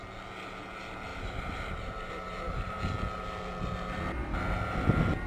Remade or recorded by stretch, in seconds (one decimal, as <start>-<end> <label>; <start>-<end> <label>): 0.0-1.1 recorded; 1.1-2.8 remade; 2.8-5.3 recorded